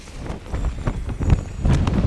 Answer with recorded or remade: recorded